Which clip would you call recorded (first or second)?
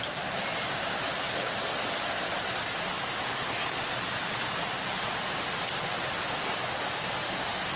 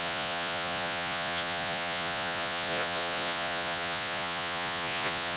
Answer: first